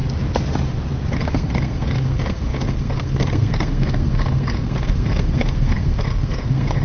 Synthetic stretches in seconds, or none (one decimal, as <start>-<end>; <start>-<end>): 1.3-6.8